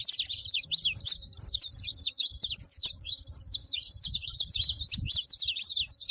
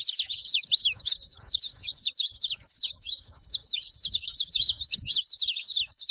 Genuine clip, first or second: first